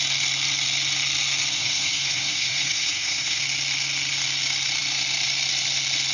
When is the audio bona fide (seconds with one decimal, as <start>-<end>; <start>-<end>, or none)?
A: 0.0-1.5; 3.4-6.1